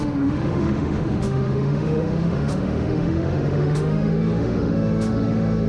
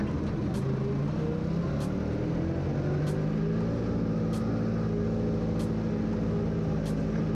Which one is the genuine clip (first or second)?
second